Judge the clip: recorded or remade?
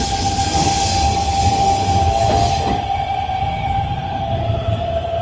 recorded